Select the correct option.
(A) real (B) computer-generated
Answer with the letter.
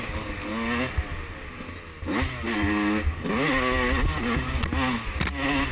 A